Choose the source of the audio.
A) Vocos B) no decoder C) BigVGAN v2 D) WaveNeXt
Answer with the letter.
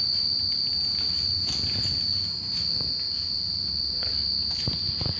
C